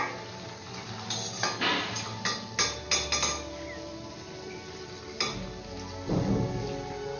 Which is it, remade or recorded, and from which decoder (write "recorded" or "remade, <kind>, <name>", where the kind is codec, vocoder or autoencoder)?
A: recorded